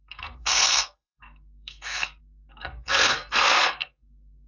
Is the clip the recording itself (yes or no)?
no